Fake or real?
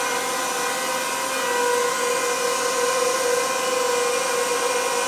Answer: real